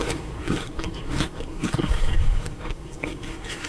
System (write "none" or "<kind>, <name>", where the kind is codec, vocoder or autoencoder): codec, SNAC